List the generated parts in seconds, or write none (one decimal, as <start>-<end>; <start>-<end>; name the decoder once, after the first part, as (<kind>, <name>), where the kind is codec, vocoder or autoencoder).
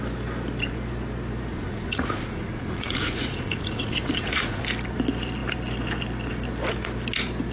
1.5-4.6 (vocoder, Vocos)